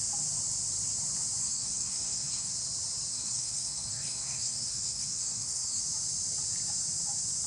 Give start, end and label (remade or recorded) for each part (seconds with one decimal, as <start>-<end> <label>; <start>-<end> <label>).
0.0-1.4 recorded; 1.4-2.5 remade; 2.5-3.1 recorded; 3.1-5.8 remade; 5.8-7.5 recorded